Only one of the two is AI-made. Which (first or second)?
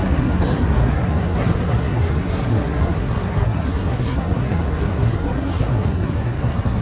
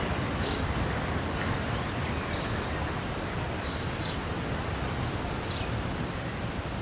first